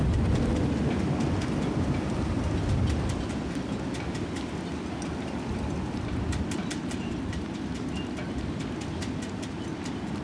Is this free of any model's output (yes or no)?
yes